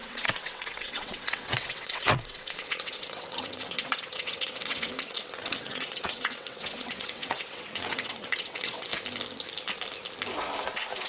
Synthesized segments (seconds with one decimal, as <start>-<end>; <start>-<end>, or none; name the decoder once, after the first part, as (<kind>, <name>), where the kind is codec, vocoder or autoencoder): 0.0-8.9 (vocoder, WaveNeXt)